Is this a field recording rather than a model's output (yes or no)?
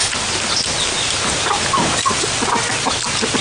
yes